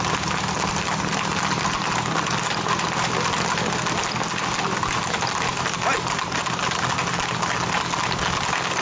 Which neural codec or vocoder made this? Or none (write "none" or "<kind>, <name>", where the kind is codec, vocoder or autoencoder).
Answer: none